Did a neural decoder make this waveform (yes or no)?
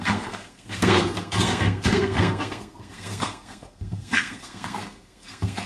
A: yes